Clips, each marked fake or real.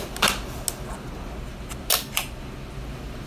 real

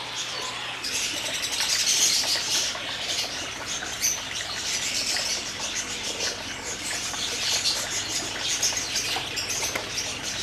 real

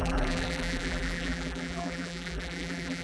fake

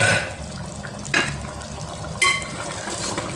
real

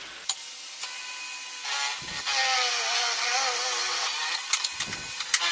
real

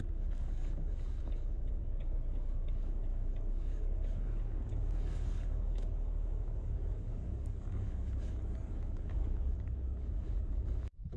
fake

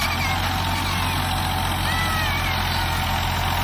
real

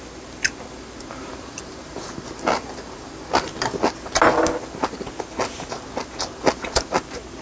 real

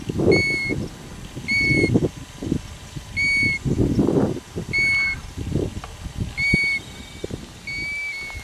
real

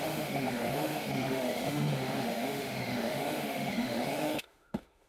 fake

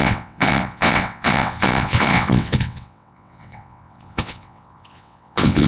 fake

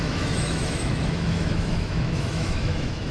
fake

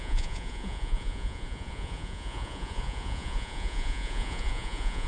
fake